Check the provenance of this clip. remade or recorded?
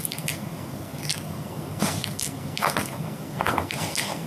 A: remade